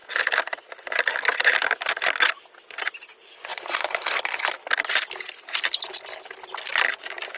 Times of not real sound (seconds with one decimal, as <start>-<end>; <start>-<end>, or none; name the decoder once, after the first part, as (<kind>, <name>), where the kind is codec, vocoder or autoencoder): 3.5-4.1 (vocoder, BigVGAN v2)